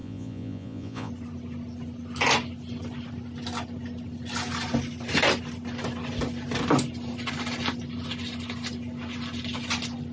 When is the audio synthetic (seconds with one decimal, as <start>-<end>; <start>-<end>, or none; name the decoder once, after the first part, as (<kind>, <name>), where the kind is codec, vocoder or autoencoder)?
0.0-1.1 (vocoder, Vocos)